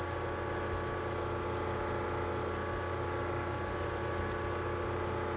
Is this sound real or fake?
real